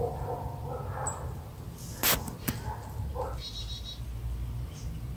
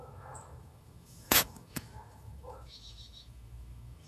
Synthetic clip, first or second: second